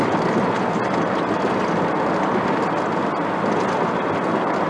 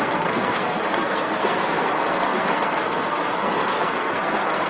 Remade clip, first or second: second